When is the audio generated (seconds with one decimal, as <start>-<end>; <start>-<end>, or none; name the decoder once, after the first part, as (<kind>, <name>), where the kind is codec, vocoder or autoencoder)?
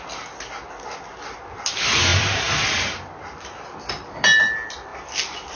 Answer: none